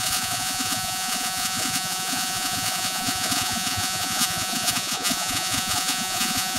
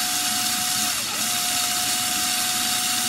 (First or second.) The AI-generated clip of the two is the first